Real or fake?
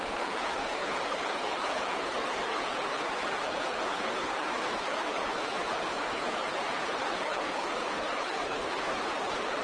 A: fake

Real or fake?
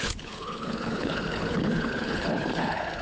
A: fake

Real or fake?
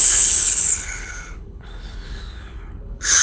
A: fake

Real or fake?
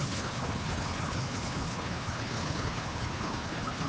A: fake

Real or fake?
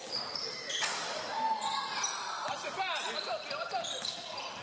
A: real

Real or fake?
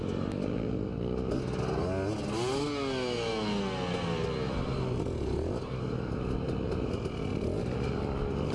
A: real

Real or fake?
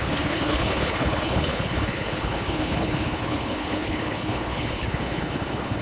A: fake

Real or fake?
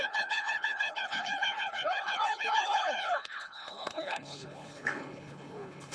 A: fake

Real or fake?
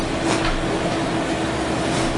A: real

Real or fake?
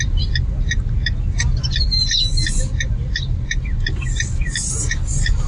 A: real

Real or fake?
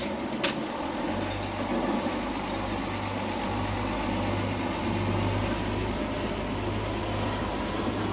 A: real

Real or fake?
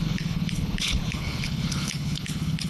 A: fake